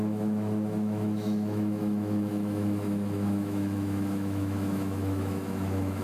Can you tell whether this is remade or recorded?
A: remade